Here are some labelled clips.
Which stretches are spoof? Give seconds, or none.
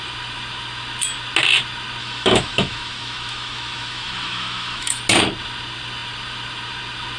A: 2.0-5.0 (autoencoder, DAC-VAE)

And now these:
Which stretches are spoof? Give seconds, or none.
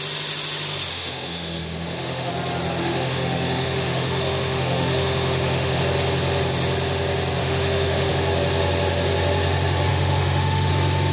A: 0.9-2.3 (autoencoder, DAC-VAE); 2.8-5.8; 7.4-8.1; 9.9-10.7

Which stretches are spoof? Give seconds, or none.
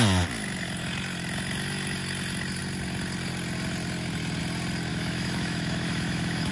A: 4.9-6.5 (autoencoder, DAC-VAE)